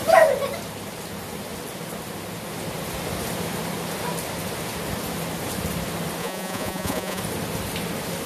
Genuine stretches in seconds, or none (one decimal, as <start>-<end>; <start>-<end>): 0.0-6.2; 7.2-8.3